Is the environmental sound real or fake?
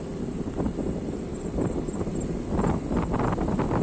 real